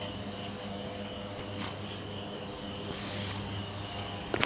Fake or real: fake